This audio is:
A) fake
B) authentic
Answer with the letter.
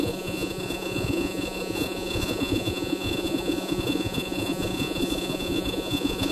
A